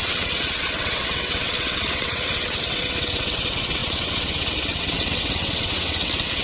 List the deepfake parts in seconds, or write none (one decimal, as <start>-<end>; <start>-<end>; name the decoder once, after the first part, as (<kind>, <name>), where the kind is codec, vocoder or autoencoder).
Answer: 0.0-6.4 (vocoder, WaveNeXt)